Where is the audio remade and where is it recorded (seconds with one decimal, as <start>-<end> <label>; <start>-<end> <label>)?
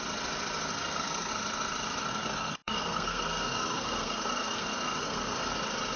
0.0-0.7 recorded; 0.7-1.3 remade; 1.3-2.1 recorded; 2.1-5.5 remade; 5.5-6.0 recorded